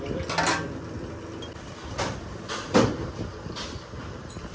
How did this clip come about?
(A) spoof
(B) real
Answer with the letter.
B